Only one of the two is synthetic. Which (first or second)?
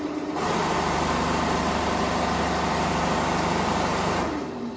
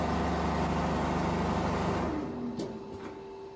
first